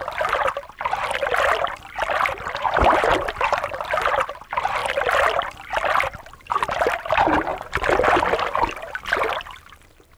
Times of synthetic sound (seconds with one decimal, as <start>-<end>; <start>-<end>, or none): 3.1-4.3; 7.5-8.1